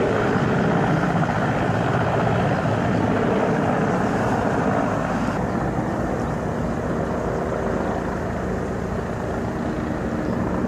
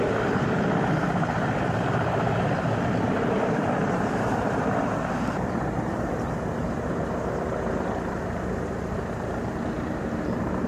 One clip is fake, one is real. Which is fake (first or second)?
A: second